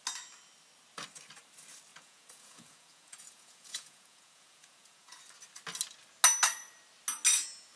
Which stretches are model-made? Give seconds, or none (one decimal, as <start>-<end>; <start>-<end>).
1.9-5.2